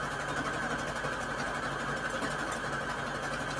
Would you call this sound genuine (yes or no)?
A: yes